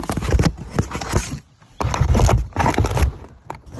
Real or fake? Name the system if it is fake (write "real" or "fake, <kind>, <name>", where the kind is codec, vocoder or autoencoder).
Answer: real